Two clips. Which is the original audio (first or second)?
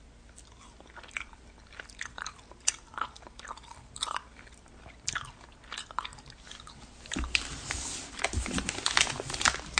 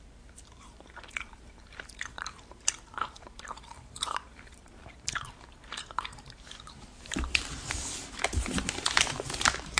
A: first